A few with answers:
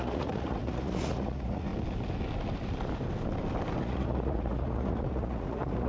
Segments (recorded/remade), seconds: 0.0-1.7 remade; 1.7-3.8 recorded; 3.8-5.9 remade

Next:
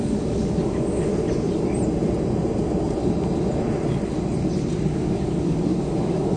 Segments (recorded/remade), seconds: 0.0-1.1 remade; 1.1-4.9 recorded; 4.9-6.4 remade

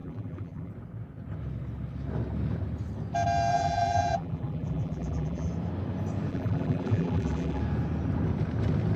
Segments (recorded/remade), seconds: 0.0-0.7 remade; 0.7-3.5 recorded; 3.5-5.5 remade; 5.5-6.3 recorded; 6.3-7.6 remade; 7.6-9.0 recorded

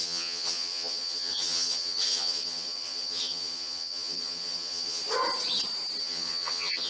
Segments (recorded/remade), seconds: 0.0-5.0 remade; 5.0-6.0 recorded; 6.0-6.9 remade

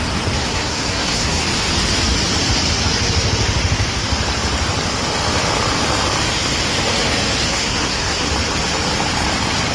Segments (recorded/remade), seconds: 0.0-0.4 recorded; 0.4-1.4 remade; 1.4-7.5 recorded; 7.5-8.3 remade; 8.3-9.7 recorded

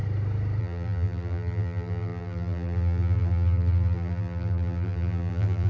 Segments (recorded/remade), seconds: 0.0-0.6 recorded; 0.6-5.7 remade

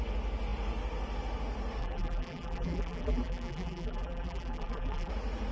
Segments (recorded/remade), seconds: 0.0-1.8 recorded; 1.8-5.1 remade; 5.1-5.5 recorded

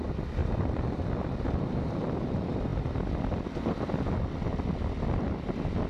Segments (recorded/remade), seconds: 0.0-0.4 recorded; 0.4-1.0 remade; 1.0-5.9 recorded